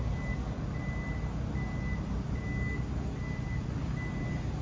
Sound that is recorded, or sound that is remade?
recorded